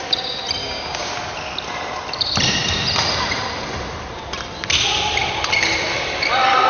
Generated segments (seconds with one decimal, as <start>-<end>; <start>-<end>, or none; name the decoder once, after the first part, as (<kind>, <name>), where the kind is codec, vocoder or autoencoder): 0.6-1.1 (codec, DAC)